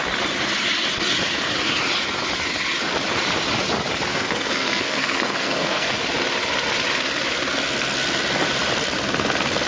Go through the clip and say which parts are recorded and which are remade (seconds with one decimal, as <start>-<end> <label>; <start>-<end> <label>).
0.0-4.1 recorded; 4.1-5.9 remade; 5.9-9.7 recorded